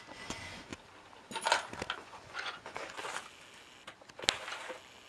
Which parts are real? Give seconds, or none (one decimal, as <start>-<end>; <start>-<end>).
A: 0.7-2.0; 3.0-5.1